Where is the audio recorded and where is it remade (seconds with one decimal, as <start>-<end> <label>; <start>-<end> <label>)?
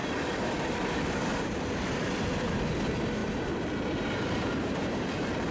0.0-5.5 remade